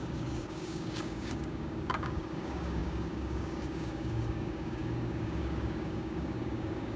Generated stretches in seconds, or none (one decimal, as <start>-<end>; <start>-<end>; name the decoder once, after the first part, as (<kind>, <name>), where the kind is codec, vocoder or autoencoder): 0.0-7.0 (codec, DAC)

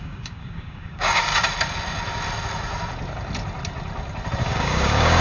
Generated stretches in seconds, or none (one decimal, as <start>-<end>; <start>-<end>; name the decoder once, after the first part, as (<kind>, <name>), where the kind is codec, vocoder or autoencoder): 0.0-1.3 (codec, DAC); 4.4-5.2

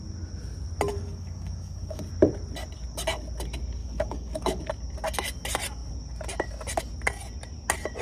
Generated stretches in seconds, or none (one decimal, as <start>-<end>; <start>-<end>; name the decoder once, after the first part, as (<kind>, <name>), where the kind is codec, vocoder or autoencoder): 0.9-2.0 (codec, DAC); 3.8-4.6

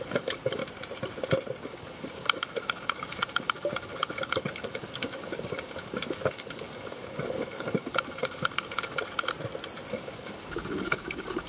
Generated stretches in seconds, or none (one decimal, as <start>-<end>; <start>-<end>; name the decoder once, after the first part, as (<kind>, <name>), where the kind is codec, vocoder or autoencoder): 0.0-0.6 (codec, DAC); 1.6-9.0; 9.9-11.5